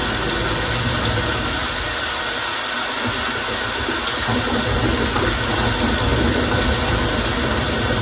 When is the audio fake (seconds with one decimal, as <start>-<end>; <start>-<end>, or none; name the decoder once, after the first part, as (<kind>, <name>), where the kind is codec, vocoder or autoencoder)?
none